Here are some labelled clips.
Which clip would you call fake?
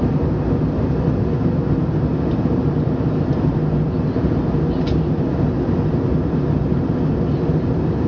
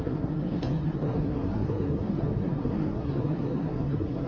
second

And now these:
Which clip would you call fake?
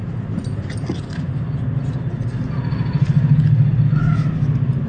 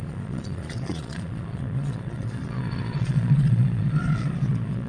second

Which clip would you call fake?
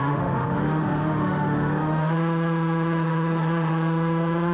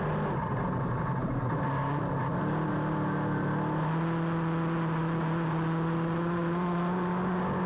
first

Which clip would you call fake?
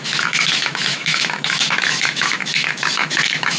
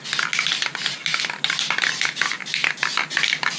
first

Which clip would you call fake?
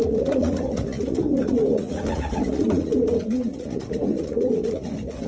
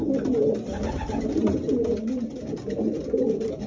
first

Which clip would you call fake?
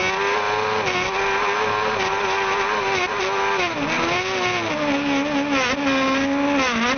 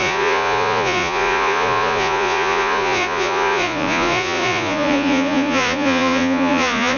second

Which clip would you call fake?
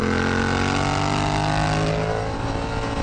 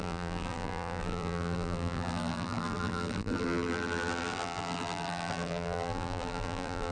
second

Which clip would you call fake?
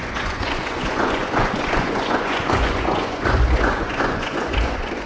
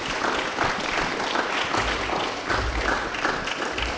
first